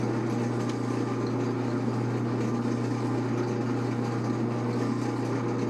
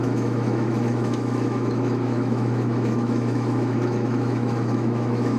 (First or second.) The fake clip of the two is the second